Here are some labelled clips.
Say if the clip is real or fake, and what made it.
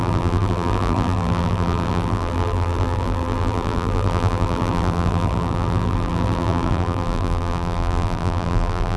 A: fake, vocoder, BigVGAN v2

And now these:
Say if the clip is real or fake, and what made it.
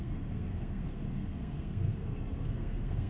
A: fake, codec, SNAC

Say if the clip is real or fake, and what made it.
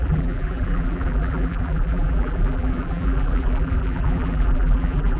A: fake, vocoder, BigVGAN v2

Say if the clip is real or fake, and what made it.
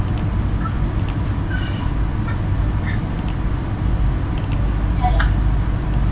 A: real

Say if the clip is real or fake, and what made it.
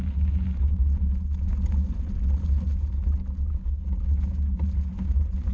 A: real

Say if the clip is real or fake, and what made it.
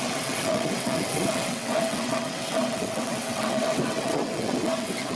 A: fake, vocoder, WaveNeXt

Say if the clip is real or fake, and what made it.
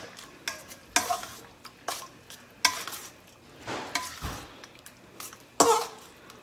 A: real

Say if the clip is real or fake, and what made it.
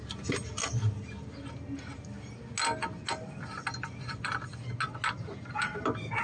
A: real